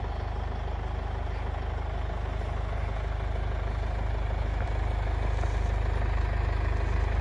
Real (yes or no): yes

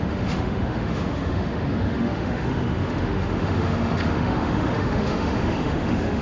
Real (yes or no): no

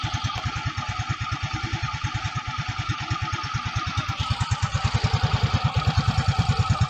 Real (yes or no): no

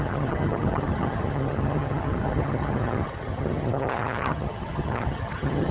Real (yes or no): no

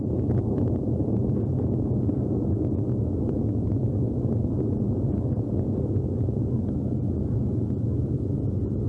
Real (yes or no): yes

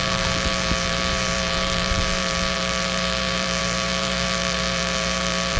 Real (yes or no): no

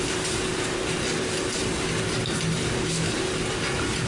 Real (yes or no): yes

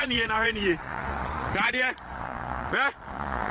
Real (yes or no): no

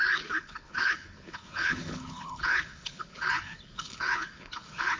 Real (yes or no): no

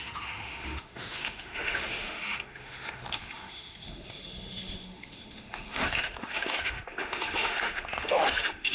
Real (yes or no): no